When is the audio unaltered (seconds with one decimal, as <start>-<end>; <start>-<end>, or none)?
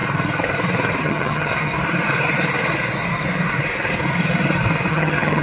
0.0-1.0; 1.7-4.9